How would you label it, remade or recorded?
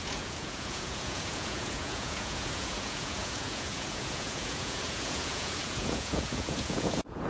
remade